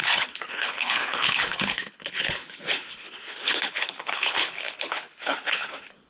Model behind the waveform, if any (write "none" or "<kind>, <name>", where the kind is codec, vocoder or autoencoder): codec, HILCodec